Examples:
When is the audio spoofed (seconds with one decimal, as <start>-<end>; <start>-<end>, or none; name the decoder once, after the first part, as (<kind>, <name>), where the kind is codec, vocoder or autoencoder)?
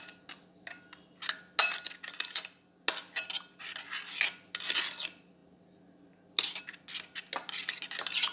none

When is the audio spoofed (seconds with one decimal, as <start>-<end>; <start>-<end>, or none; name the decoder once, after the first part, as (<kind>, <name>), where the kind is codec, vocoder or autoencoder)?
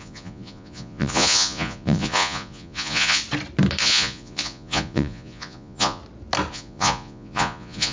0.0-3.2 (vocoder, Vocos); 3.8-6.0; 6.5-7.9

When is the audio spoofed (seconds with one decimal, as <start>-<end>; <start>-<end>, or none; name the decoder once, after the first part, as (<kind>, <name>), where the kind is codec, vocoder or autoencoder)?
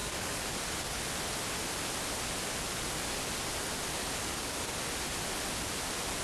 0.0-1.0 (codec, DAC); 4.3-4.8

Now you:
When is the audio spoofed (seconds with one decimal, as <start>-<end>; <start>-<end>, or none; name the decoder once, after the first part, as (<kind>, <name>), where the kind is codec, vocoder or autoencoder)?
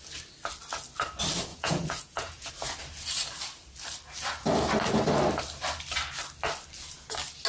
1.5-2.5 (vocoder, Vocos)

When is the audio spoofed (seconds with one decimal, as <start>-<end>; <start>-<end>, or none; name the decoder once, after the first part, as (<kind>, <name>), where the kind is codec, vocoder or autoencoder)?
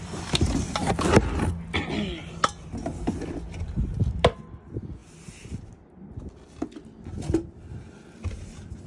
none